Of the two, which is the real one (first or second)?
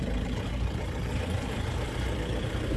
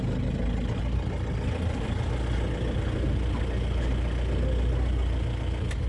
second